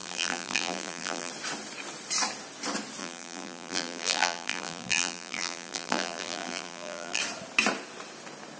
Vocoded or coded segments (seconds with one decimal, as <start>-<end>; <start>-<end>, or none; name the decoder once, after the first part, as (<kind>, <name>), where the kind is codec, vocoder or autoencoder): 0.0-1.3 (vocoder, BigVGAN v2); 3.0-7.2